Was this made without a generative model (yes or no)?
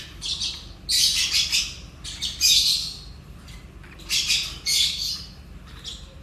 yes